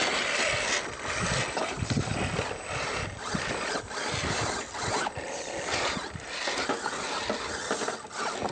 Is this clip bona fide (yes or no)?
yes